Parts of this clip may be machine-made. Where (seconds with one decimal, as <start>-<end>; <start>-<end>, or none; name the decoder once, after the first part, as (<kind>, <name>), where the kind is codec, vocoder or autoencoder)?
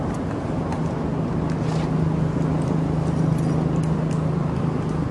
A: none